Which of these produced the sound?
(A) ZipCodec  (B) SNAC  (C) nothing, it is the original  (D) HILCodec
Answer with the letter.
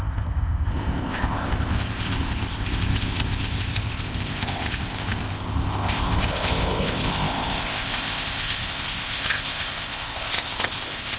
A